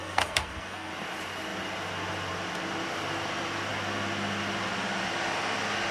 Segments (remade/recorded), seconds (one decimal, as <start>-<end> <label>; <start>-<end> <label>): 0.0-0.9 remade; 0.9-5.9 recorded